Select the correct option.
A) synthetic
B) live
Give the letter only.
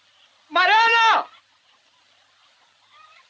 B